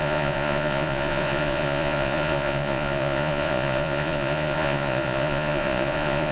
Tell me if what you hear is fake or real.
fake